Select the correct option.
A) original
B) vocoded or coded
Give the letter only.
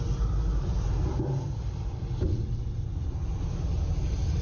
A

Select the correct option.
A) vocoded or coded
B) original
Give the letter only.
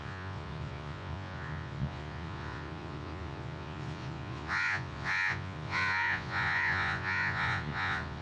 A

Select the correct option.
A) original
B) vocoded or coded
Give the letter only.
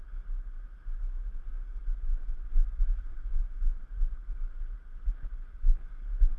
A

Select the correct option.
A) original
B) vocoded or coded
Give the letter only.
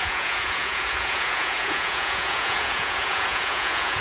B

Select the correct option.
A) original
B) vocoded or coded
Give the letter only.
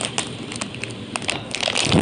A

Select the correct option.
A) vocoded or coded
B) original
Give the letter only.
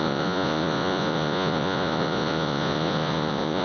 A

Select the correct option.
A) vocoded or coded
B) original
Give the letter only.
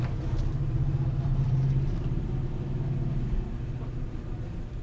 B